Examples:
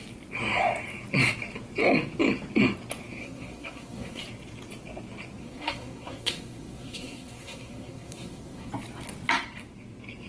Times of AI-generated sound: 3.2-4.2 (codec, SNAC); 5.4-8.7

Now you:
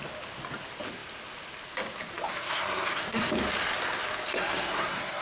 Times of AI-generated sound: 2.3-3.3 (codec, SNAC); 4.3-5.2

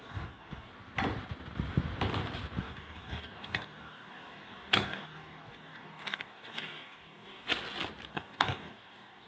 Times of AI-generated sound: 0.0-0.7 (codec, DAC); 2.6-7.5; 8.1-9.3

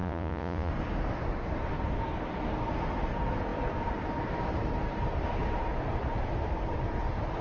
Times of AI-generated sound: 0.0-0.7 (vocoder, Vocos)

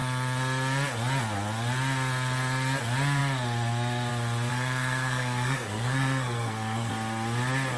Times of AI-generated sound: 4.5-6.9 (codec, SNAC)

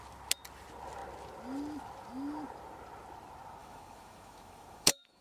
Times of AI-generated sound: 3.6-5.2 (autoencoder, DAC-VAE)

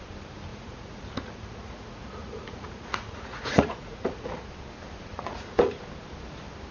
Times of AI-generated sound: 0.5-4.5 (vocoder, Vocos); 5.1-5.8

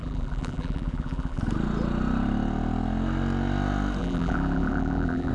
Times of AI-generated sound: 0.0-1.4 (vocoder, BigVGAN v2); 4.0-5.3